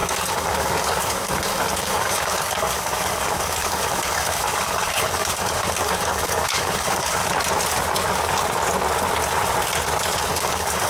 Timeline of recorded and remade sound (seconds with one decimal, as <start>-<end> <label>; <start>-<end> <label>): 0.0-7.2 remade; 7.2-10.2 recorded; 10.2-10.9 remade